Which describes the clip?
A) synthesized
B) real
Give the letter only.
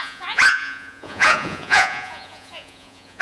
A